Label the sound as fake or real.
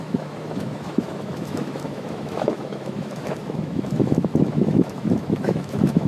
fake